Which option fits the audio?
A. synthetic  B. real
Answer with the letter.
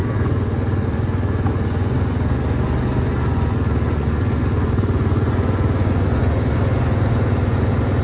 A